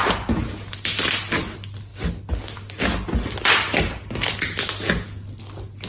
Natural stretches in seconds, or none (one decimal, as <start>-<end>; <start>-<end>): 0.0-5.9